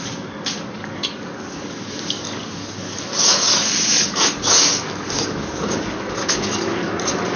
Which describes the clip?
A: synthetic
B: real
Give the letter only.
A